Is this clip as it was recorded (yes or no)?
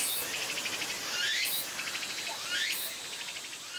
yes